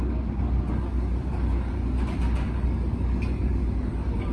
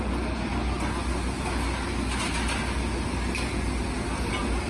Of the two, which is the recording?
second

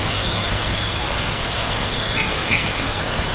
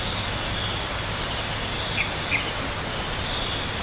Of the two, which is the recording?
second